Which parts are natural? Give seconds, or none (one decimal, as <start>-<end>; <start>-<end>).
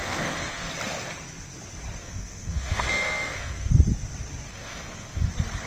0.7-2.0; 3.7-4.5; 5.3-5.7